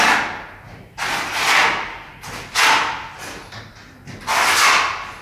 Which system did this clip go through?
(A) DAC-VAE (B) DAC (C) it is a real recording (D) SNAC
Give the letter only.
C